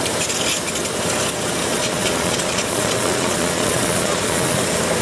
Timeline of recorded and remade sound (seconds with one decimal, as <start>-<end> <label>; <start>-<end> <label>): 0.0-1.7 recorded; 1.7-4.6 remade; 4.6-5.0 recorded